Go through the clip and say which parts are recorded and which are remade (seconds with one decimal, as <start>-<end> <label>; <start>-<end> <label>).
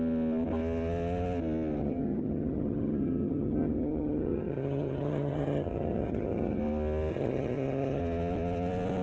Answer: 0.0-1.8 recorded; 1.8-6.6 remade; 6.6-7.1 recorded; 7.1-8.0 remade; 8.0-9.0 recorded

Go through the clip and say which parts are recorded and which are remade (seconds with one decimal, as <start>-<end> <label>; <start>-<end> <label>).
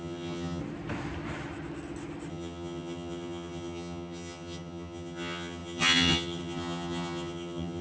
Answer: 0.0-0.6 remade; 0.6-2.3 recorded; 2.3-7.8 remade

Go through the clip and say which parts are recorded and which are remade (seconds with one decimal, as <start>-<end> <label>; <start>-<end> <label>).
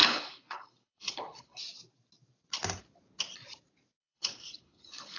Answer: 0.0-1.6 remade; 1.6-4.0 recorded; 4.0-5.2 remade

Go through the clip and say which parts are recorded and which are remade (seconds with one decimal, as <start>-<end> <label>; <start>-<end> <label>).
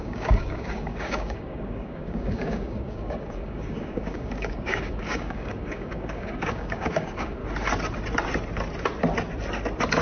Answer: 0.0-7.4 remade; 7.4-10.0 recorded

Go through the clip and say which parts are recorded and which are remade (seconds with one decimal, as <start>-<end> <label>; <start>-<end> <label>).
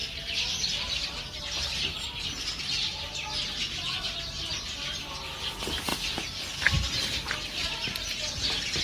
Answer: 0.0-1.4 recorded; 1.4-5.9 remade; 5.9-8.8 recorded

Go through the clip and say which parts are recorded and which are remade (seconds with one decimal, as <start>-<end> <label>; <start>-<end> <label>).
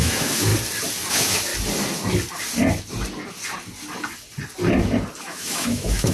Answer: 0.0-0.5 remade; 0.5-1.1 recorded; 1.1-1.5 remade; 1.5-5.2 recorded; 5.2-6.1 remade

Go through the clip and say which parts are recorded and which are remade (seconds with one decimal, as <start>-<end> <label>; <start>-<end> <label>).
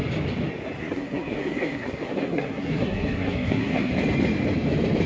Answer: 0.0-0.8 recorded; 0.8-3.9 remade; 3.9-5.1 recorded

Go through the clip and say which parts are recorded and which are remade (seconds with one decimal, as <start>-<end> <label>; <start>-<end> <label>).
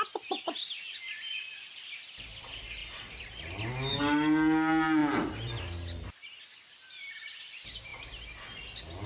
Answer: 0.0-2.8 recorded; 2.8-3.7 remade; 3.7-7.9 recorded; 7.9-8.6 remade; 8.6-9.1 recorded